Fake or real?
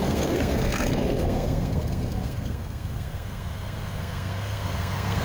fake